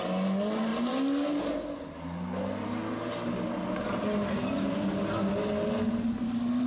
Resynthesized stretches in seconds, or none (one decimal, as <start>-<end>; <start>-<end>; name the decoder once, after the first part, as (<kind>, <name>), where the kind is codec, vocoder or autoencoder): none